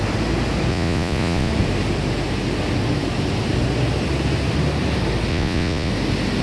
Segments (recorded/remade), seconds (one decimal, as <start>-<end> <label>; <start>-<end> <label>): 0.0-0.7 recorded; 0.7-1.5 remade; 1.5-5.3 recorded; 5.3-5.9 remade; 5.9-6.4 recorded